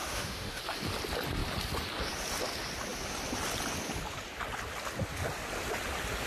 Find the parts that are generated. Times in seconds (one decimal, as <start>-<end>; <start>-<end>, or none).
0.0-0.6